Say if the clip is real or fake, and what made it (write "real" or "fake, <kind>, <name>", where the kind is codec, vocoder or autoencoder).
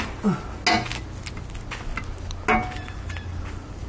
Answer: real